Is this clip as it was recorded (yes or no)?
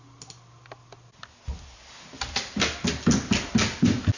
yes